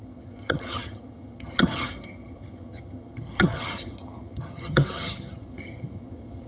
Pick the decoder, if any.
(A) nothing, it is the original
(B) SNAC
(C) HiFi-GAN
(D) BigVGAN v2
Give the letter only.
C